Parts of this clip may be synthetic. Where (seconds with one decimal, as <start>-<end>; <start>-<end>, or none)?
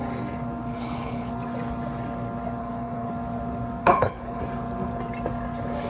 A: 0.7-1.3; 2.6-3.1; 3.8-4.4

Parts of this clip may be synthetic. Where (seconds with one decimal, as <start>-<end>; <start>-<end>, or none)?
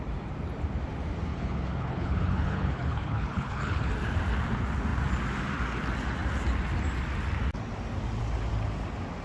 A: 1.3-3.9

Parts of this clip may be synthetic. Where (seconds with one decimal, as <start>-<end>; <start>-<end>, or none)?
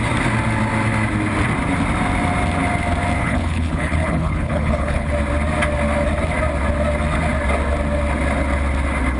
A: 3.2-5.1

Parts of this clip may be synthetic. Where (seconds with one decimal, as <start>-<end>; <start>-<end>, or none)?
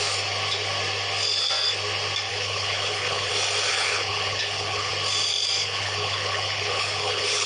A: 2.3-3.3; 3.7-4.9; 5.6-7.5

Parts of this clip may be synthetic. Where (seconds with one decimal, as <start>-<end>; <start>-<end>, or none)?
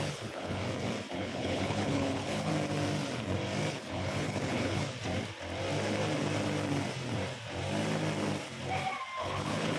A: 0.0-0.6; 1.1-2.5; 3.7-4.8; 9.2-9.8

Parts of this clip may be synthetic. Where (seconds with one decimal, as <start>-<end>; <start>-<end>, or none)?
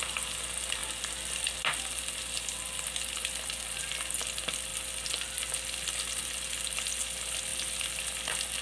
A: none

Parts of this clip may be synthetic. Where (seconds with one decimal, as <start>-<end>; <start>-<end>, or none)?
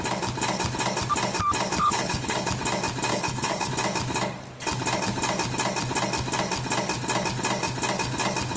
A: 1.8-2.5; 3.1-3.7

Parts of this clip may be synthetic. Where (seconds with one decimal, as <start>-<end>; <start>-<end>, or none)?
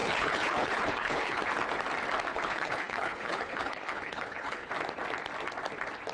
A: 0.0-1.4; 2.3-4.7